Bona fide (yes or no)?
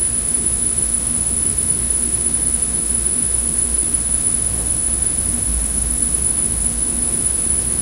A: no